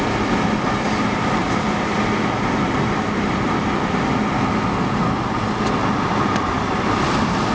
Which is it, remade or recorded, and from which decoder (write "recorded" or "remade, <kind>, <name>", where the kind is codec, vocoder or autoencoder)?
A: recorded